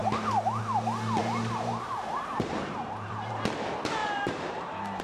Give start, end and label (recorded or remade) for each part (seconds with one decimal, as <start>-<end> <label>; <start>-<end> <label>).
0.0-0.6 remade; 0.6-1.2 recorded; 1.2-3.3 remade; 3.3-4.0 recorded; 4.0-5.0 remade